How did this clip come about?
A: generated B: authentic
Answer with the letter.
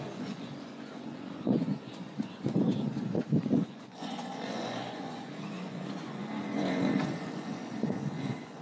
A